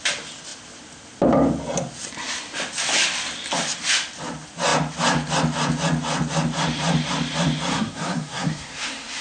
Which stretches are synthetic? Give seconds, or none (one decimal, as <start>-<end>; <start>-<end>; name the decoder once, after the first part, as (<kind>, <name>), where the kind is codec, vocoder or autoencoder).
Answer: 7.7-9.2 (codec, SNAC)